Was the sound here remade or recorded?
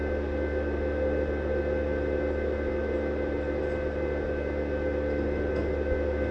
recorded